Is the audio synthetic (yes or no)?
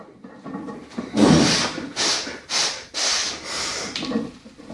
yes